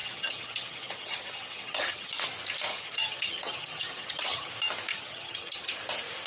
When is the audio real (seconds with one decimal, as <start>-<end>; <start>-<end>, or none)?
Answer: 2.1-2.7; 4.5-4.9; 5.7-6.3